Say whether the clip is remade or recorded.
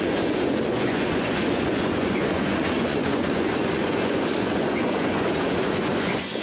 remade